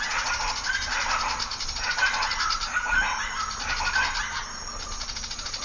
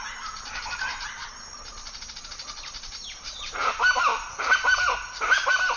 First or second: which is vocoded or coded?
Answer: second